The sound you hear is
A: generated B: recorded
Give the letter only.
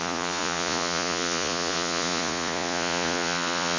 A